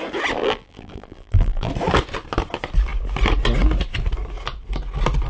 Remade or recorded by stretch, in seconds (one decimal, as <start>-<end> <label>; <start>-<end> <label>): 0.0-0.4 recorded; 0.4-1.7 remade; 1.7-5.3 recorded